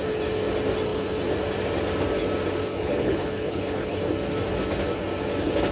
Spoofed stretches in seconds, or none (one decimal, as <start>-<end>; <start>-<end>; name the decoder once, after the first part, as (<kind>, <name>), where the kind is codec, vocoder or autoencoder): 2.7-4.0 (codec, HILCodec)